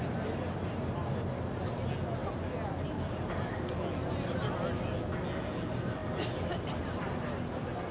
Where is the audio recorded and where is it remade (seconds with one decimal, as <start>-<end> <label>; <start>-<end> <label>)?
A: 0.0-7.9 recorded